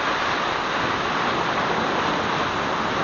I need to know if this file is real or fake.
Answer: real